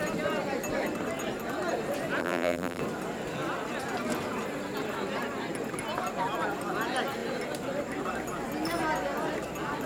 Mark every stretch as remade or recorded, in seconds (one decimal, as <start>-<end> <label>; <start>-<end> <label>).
0.0-2.2 recorded; 2.2-2.8 remade; 2.8-9.9 recorded